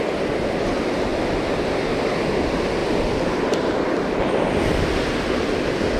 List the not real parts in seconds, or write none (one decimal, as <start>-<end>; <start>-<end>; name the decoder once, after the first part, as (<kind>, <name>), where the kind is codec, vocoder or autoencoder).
2.8-5.1 (vocoder, BigVGAN v2)